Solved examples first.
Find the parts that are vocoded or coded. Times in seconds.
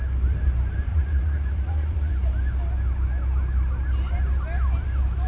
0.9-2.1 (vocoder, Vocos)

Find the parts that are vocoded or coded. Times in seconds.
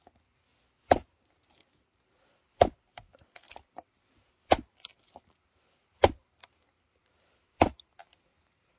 none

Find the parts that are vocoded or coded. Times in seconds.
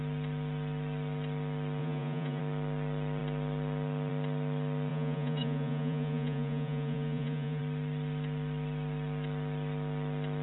1.8-2.4 (vocoder, Vocos); 4.9-7.6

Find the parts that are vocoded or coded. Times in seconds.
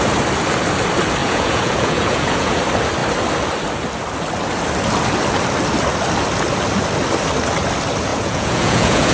1.2-2.6 (vocoder, Vocos); 8.1-9.1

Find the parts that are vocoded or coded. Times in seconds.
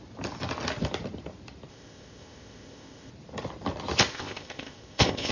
1.7-3.1 (codec, ZipCodec); 4.1-5.3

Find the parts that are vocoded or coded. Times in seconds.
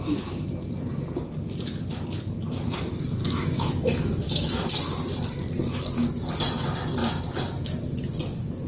3.2-4.7 (autoencoder, DAC-VAE)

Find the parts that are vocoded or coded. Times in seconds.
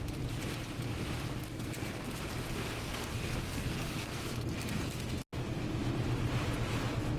1.4-2.0 (codec, SNAC); 2.6-4.9